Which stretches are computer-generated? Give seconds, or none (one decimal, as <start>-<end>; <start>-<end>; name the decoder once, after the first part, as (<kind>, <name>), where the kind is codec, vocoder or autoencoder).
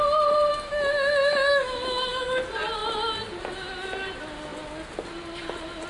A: 0.5-2.4 (autoencoder, DAC-VAE)